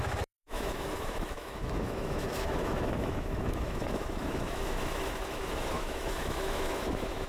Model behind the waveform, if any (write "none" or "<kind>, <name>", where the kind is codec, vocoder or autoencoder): autoencoder, DAC-VAE